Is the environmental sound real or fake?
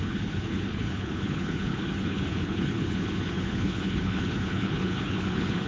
fake